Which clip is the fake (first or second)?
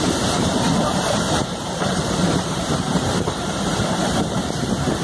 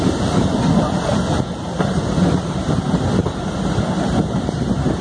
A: first